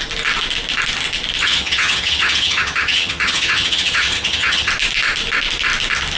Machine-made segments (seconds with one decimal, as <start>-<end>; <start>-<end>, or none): 1.4-4.7